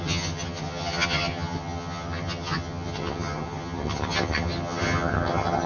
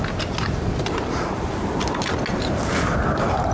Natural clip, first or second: second